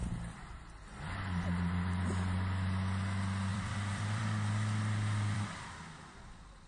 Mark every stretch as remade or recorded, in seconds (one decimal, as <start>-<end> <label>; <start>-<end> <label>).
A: 0.0-3.5 recorded; 3.5-6.7 remade